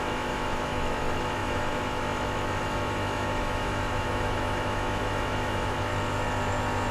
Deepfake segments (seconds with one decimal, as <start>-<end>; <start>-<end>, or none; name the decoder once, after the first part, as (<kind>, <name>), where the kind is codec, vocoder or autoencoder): 0.0-5.9 (autoencoder, DAC-VAE)